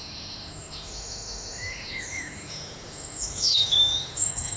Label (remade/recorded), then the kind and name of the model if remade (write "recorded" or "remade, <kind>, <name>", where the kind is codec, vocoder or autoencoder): remade, autoencoder, DAC-VAE